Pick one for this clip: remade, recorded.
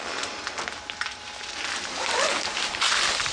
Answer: recorded